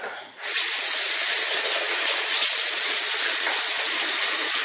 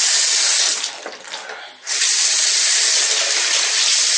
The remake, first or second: first